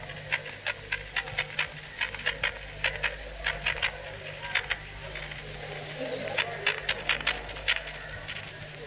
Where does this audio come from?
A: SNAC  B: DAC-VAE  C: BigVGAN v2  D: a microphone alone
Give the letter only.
D